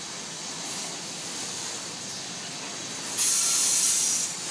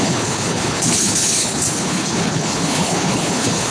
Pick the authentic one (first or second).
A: first